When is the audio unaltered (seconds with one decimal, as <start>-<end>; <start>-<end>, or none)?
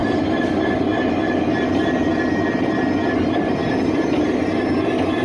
0.5-0.9; 1.6-3.6; 4.6-5.2